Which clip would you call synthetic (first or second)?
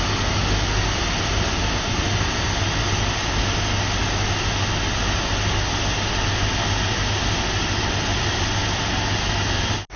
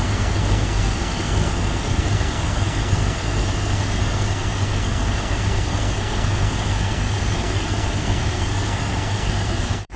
second